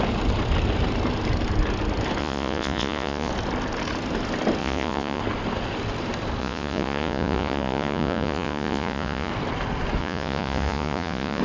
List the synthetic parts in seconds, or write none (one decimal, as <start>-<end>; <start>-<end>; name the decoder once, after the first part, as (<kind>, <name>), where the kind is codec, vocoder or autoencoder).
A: 2.2-3.3 (vocoder, Vocos); 4.6-5.2; 6.4-9.3; 10.0-11.4